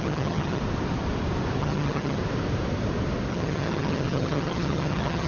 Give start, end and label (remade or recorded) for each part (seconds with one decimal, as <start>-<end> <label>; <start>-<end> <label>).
0.0-0.6 remade; 0.6-1.6 recorded; 1.6-2.2 remade; 2.2-3.3 recorded; 3.3-5.3 remade

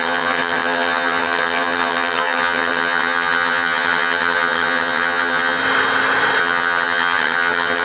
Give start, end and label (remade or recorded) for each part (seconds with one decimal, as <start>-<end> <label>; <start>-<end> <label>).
0.0-5.6 remade; 5.6-6.4 recorded; 6.4-7.8 remade

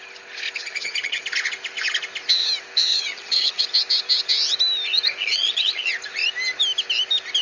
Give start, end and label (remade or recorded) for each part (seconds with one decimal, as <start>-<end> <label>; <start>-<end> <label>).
0.0-0.6 recorded; 0.6-1.2 remade; 1.2-2.9 recorded; 2.9-3.6 remade; 3.6-5.2 recorded; 5.2-5.9 remade; 5.9-7.4 recorded

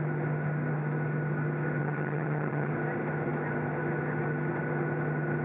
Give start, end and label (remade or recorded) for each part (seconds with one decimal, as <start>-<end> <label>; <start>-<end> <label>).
0.0-1.8 recorded; 1.8-2.7 remade; 2.7-5.4 recorded

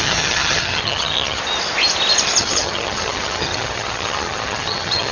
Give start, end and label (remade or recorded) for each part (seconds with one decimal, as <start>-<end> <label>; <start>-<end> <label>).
0.0-1.4 remade; 1.4-2.4 recorded; 2.4-5.1 remade

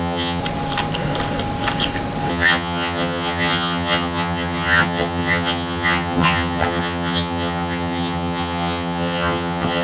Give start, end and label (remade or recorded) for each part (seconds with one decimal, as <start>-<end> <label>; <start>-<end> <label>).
0.0-0.4 remade; 0.4-2.3 recorded; 2.3-9.8 remade

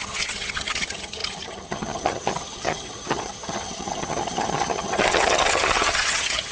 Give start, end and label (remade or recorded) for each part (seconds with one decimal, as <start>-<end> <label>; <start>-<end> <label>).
0.0-6.5 remade

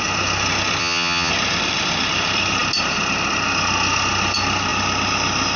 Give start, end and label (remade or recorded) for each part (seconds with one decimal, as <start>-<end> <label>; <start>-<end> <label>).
0.0-0.8 recorded; 0.8-1.3 remade; 1.3-5.6 recorded